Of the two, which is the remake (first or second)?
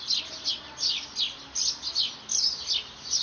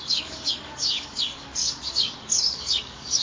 second